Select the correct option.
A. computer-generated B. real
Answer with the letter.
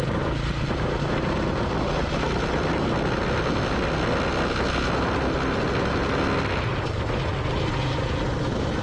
B